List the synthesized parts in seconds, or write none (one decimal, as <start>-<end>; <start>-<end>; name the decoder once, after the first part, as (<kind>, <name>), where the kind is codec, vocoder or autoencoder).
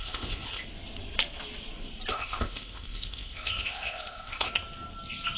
0.0-0.6 (codec, ZipCodec); 2.1-4.5